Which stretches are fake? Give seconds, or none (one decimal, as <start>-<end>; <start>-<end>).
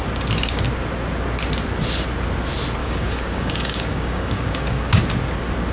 2.8-5.0